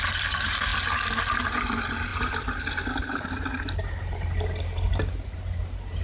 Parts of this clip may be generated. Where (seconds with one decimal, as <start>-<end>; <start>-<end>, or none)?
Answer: 0.0-0.7; 1.4-6.0